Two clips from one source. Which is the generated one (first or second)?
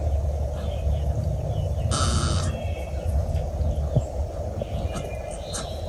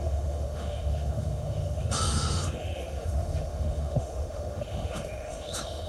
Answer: second